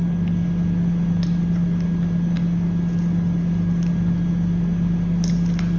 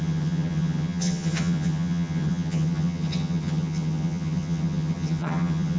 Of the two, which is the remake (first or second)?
second